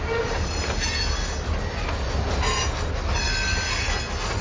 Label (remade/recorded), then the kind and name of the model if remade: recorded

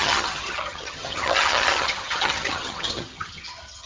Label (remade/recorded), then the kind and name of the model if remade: remade, vocoder, HiFi-GAN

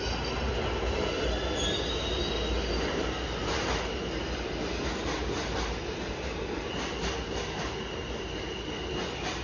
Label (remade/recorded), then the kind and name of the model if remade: recorded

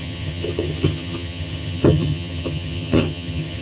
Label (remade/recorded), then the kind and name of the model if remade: remade, vocoder, HiFi-GAN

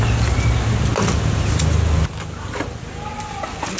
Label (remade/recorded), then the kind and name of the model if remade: recorded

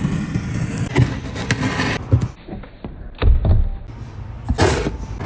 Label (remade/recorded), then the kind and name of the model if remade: recorded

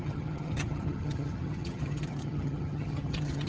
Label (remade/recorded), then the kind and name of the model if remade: remade, vocoder, HiFi-GAN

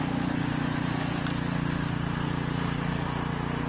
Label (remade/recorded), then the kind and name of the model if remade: recorded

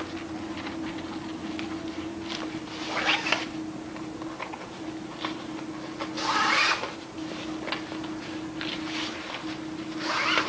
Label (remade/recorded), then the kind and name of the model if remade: recorded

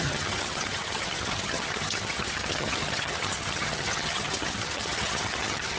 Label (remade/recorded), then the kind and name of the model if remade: remade, vocoder, HiFi-GAN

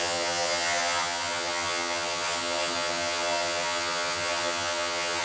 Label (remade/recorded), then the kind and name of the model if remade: remade, vocoder, HiFi-GAN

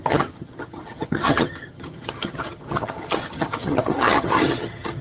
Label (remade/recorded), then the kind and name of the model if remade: remade, vocoder, HiFi-GAN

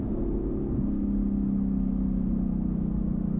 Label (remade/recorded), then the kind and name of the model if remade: recorded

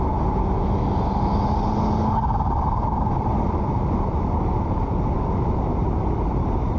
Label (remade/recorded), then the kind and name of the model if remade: recorded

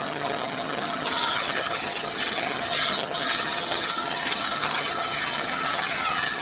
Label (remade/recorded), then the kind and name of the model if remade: remade, vocoder, HiFi-GAN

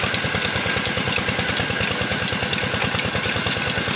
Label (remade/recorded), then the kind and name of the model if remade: recorded